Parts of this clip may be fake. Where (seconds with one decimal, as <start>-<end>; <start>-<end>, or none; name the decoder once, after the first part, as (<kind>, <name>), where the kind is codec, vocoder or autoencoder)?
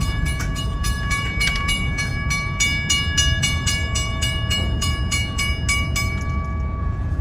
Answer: 0.0-2.1 (vocoder, Vocos); 3.4-5.5; 6.8-7.2